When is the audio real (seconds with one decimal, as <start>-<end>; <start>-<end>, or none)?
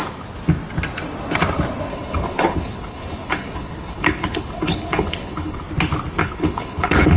0.0-1.9; 5.6-6.2